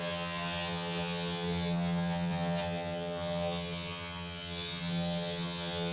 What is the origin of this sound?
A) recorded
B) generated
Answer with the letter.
B